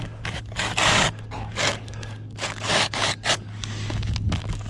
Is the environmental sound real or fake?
fake